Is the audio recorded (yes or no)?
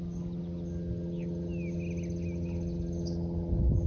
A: yes